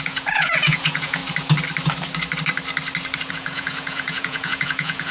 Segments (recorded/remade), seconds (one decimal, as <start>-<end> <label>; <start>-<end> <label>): 0.0-1.2 remade; 1.2-3.3 recorded; 3.3-5.1 remade